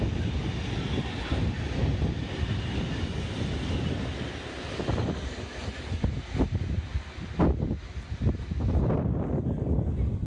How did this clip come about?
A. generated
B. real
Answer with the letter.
B